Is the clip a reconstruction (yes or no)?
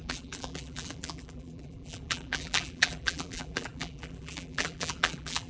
yes